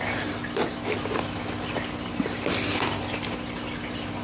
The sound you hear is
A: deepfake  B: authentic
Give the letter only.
B